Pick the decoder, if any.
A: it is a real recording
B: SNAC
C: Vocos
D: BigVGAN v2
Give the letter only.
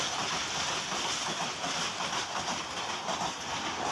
A